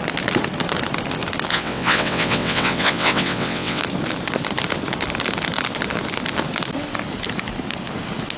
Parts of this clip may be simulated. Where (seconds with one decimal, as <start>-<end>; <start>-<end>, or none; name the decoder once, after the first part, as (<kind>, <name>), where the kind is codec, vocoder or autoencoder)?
1.5-3.8 (vocoder, WaveNeXt)